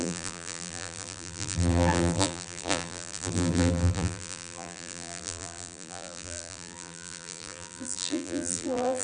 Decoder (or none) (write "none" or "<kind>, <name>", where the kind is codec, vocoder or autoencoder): vocoder, BigVGAN v2